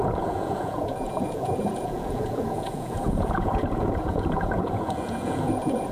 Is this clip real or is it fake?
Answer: fake